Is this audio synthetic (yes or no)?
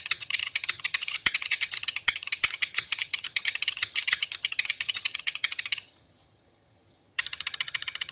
yes